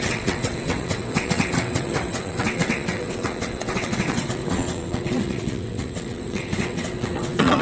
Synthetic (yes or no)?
yes